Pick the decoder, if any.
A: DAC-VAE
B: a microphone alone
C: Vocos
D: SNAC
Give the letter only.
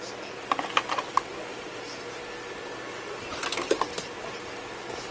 B